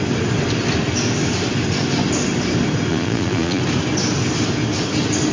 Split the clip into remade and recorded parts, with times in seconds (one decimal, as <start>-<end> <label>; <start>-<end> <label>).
0.0-2.9 recorded; 2.9-3.6 remade; 3.6-5.3 recorded